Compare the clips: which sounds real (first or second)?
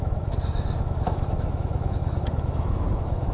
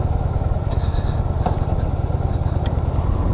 second